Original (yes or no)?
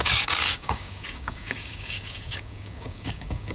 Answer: no